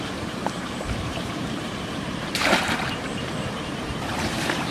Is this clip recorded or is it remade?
remade